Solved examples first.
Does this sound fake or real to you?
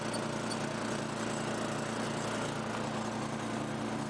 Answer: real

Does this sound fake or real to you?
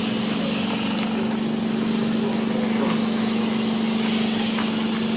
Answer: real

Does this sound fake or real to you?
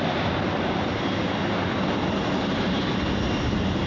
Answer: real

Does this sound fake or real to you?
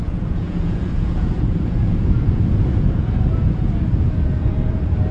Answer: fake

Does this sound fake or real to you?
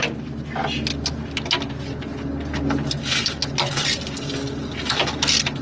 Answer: real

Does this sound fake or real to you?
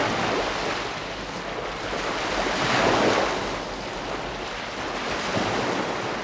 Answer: real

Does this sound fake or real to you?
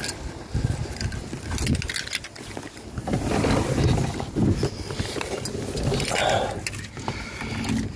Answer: real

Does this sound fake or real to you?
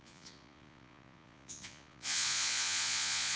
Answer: fake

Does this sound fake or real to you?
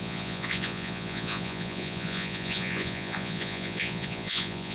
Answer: fake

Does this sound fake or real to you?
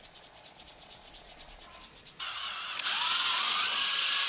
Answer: fake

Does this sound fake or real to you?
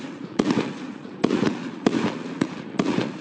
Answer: fake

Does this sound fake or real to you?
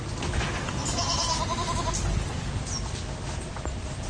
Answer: real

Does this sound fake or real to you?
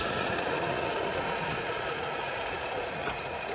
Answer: fake